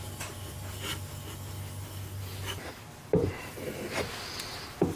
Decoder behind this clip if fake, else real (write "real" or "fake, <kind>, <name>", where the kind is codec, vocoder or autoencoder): real